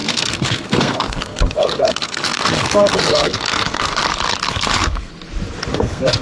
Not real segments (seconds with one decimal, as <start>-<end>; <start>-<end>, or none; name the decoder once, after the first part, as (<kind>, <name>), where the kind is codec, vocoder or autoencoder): 0.0-3.9 (codec, SNAC); 4.5-5.1; 5.7-6.2